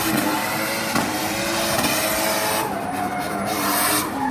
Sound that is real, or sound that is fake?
real